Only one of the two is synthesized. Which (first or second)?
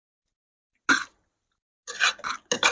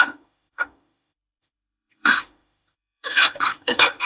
second